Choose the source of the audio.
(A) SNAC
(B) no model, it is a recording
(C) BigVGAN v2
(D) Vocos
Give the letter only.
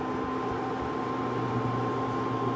B